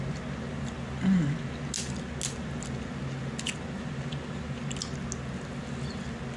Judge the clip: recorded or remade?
recorded